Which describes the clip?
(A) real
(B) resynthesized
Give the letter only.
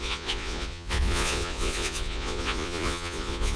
B